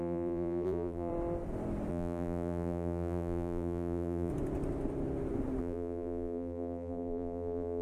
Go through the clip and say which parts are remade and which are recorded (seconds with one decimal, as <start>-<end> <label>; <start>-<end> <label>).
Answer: 0.0-1.1 remade; 1.1-1.9 recorded; 1.9-4.3 remade; 4.3-5.6 recorded; 5.6-7.8 remade